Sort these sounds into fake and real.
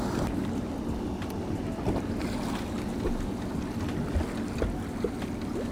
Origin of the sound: real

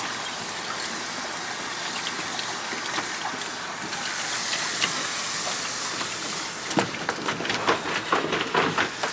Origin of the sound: real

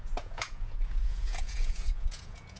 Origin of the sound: fake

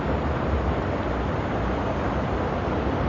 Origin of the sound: real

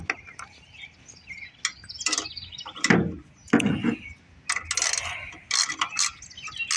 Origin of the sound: real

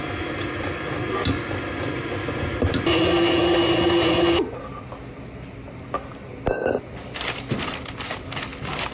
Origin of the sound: real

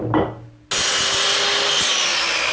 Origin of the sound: real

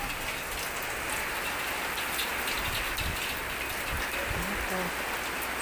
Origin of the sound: real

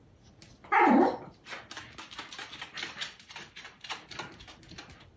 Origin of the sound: real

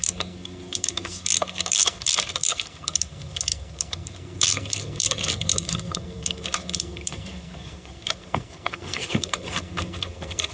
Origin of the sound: fake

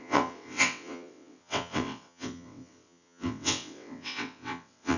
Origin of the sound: fake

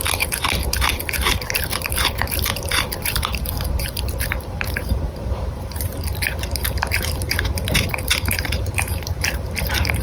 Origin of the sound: fake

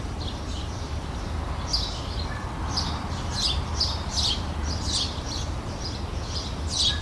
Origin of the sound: real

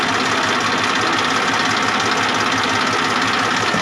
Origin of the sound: real